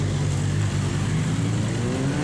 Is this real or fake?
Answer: real